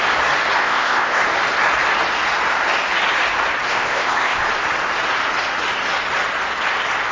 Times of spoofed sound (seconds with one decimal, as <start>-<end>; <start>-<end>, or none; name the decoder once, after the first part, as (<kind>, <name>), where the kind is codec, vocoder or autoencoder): 0.6-1.2 (codec, ZipCodec); 3.7-4.4

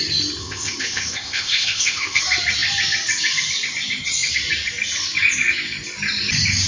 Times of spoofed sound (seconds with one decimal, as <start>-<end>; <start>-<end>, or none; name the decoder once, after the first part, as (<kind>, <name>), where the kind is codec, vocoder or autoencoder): 0.4-2.2 (codec, ZipCodec)

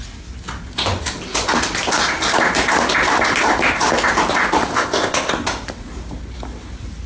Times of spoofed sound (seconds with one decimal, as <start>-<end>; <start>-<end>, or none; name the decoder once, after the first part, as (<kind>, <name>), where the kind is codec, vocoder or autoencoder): 4.7-5.3 (codec, ZipCodec)

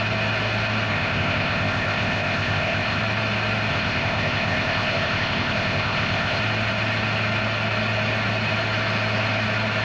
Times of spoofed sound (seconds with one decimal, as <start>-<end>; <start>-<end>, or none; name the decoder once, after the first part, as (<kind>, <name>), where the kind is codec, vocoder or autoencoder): 0.9-3.0 (codec, ZipCodec); 3.7-6.4

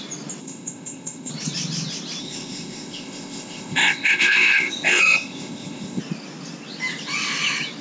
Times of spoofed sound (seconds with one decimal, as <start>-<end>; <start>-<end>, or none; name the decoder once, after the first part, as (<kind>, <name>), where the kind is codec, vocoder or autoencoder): 0.4-1.3 (codec, ZipCodec); 2.2-6.0

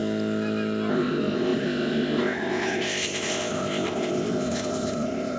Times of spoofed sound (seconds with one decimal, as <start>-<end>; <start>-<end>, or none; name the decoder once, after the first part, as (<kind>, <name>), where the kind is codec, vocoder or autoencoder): 0.9-5.4 (codec, ZipCodec)